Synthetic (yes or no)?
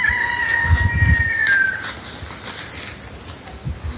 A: no